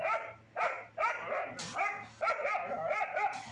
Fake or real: real